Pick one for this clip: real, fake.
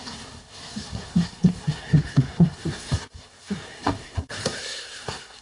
fake